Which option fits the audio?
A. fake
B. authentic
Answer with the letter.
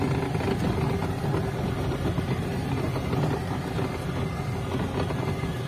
B